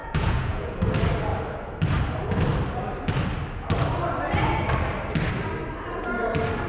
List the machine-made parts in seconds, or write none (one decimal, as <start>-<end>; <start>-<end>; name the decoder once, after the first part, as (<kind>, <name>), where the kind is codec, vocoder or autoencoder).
0.0-0.8 (vocoder, Vocos)